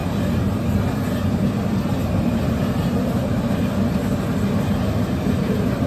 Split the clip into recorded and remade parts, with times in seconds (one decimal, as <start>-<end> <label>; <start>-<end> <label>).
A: 0.0-5.9 recorded